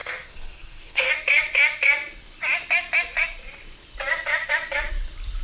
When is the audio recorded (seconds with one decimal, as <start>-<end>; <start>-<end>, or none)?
1.1-5.4